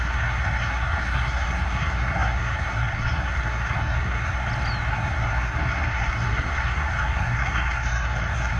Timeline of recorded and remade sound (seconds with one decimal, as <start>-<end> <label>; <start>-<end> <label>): 0.0-4.4 remade; 4.4-4.9 recorded; 4.9-8.6 remade